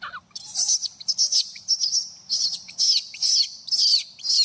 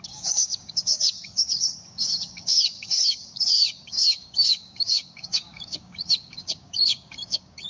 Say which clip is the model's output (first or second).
second